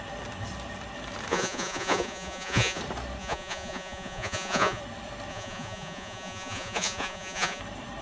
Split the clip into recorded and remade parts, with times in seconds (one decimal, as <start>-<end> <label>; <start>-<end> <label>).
0.0-1.3 recorded; 1.3-2.8 remade; 2.8-3.2 recorded; 3.2-4.8 remade; 4.8-5.3 recorded; 5.3-7.6 remade; 7.6-8.0 recorded